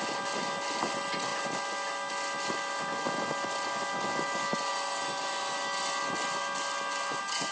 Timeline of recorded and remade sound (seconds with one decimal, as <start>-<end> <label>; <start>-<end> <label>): 0.0-7.5 recorded